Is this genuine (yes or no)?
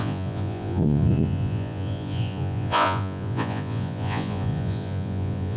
no